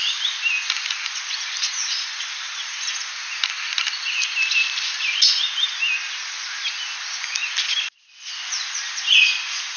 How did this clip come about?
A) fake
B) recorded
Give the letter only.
B